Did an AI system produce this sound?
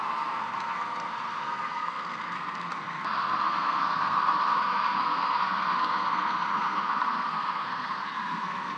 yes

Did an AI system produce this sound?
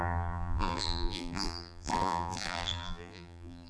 yes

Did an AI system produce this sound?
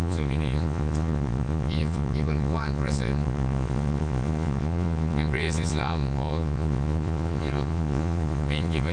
yes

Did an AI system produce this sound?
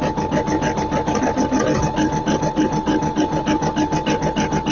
no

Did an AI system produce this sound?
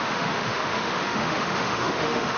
yes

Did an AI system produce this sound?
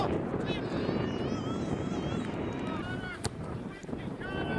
yes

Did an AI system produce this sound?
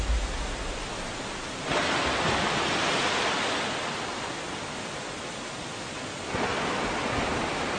no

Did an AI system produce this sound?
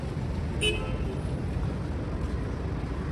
no